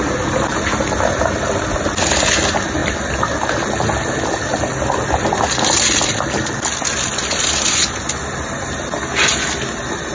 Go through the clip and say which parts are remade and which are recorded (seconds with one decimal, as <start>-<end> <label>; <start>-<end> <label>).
0.0-10.1 recorded